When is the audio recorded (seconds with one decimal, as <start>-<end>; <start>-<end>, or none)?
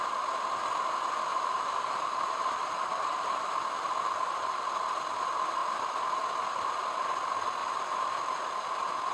0.0-1.3; 4.7-7.6; 8.5-9.1